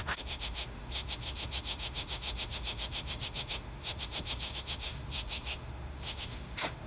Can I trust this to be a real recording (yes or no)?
no